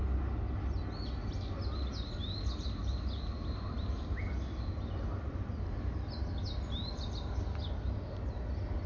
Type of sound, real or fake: real